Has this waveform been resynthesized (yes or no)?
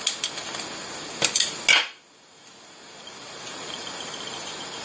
no